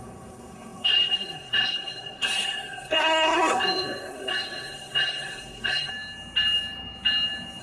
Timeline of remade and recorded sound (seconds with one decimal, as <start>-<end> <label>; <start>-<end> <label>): 0.0-5.9 remade; 5.9-7.6 recorded